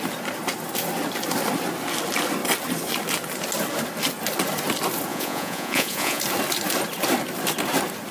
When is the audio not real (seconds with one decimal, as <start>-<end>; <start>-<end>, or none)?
5.1-6.2